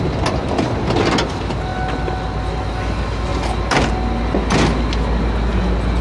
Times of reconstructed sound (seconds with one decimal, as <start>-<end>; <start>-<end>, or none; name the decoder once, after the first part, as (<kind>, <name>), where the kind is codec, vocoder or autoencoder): 3.3-3.9 (vocoder, BigVGAN v2)

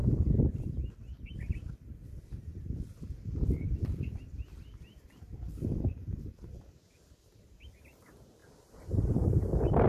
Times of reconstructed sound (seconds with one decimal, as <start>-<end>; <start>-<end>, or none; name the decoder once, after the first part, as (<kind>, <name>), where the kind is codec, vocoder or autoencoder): 0.0-5.2 (vocoder, BigVGAN v2)

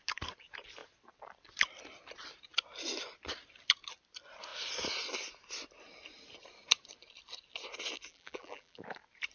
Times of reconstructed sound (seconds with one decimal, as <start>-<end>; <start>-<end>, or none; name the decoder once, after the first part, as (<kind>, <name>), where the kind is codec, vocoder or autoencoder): 8.1-8.8 (vocoder, BigVGAN v2)

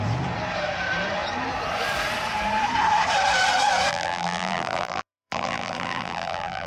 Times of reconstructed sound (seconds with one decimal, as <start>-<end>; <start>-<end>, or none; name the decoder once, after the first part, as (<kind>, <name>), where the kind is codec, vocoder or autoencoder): 3.9-6.7 (vocoder, BigVGAN v2)

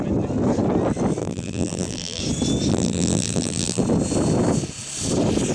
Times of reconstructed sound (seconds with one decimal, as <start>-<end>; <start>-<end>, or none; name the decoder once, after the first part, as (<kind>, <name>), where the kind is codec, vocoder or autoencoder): 1.2-2.2 (vocoder, BigVGAN v2); 2.7-3.8